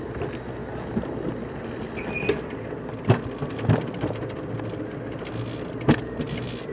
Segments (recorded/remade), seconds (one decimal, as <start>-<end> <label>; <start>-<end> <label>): 0.0-6.7 recorded